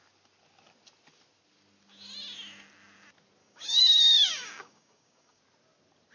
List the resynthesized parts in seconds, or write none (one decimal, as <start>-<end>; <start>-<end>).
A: 3.4-5.4